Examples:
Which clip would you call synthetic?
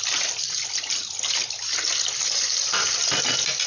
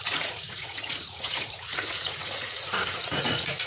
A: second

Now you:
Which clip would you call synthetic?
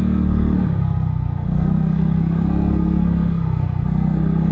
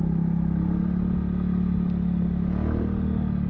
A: first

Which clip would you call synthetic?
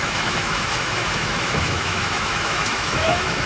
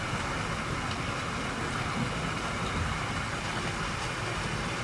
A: first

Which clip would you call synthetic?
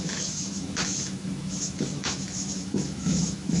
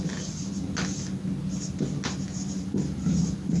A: first